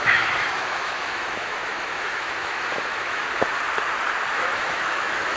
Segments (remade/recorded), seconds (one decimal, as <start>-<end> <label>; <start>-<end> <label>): 0.0-3.2 remade; 3.2-4.3 recorded; 4.3-5.4 remade